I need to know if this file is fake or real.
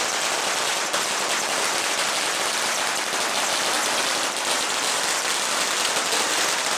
real